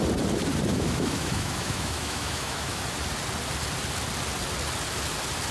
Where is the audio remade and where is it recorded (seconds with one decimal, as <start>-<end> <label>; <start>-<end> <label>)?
0.0-0.7 recorded; 0.7-2.8 remade; 2.8-5.5 recorded

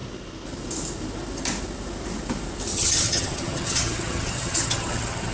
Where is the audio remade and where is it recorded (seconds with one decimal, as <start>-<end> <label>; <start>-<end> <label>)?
0.0-2.7 recorded; 2.7-5.3 remade

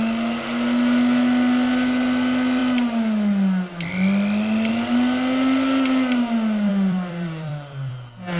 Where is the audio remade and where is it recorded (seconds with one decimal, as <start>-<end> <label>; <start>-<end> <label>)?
0.0-6.7 recorded; 6.7-7.9 remade; 7.9-8.4 recorded

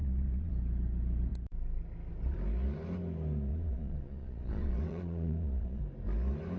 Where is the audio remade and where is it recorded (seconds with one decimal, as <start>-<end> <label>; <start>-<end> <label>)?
0.0-0.5 remade; 0.5-3.5 recorded; 3.5-5.8 remade; 5.8-6.6 recorded

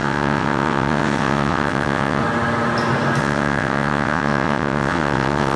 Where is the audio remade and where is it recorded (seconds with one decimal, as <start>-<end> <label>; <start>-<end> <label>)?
0.0-2.2 remade; 2.2-3.2 recorded; 3.2-5.6 remade

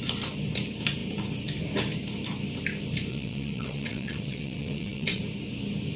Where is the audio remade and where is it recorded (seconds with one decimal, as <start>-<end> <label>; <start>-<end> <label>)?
0.0-3.1 recorded; 3.1-5.2 remade; 5.2-6.0 recorded

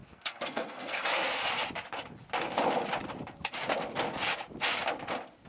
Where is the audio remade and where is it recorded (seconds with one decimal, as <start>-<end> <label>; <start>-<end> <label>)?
0.0-1.1 remade; 1.1-5.5 recorded

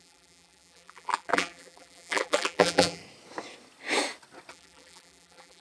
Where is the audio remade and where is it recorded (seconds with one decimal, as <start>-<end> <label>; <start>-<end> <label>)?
0.0-3.0 remade; 3.0-4.5 recorded; 4.5-5.6 remade